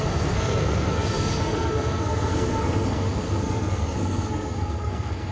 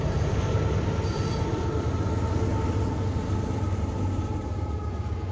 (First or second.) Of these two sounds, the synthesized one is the first